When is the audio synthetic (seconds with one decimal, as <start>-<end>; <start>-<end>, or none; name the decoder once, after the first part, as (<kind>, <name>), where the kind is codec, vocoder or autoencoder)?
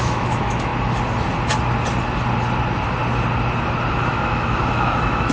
0.0-0.7 (autoencoder, DAC-VAE); 3.9-5.3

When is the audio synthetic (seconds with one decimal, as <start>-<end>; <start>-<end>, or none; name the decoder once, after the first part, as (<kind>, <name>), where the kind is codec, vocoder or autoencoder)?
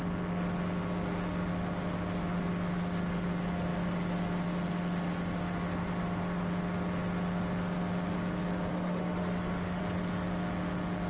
8.7-9.8 (autoencoder, DAC-VAE)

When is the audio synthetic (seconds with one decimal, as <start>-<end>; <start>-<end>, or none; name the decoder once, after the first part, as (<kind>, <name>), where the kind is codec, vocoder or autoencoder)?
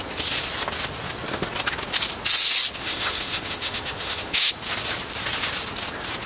2.8-4.5 (autoencoder, DAC-VAE)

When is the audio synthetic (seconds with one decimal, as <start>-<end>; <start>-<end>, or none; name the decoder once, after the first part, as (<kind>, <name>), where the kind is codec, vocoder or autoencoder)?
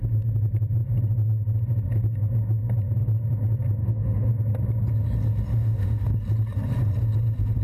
3.8-4.3 (autoencoder, DAC-VAE); 5.6-6.1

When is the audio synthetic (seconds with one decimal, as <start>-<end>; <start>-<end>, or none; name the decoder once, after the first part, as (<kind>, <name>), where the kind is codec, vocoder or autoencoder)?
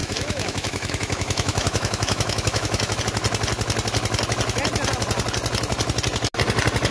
0.0-3.0 (autoencoder, DAC-VAE)